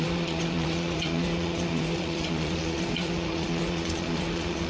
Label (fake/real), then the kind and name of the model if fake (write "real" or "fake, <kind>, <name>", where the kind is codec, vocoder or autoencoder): fake, vocoder, Vocos